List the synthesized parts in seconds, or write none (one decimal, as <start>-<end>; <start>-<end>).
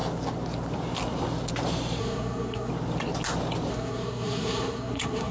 2.0-2.7; 3.7-5.3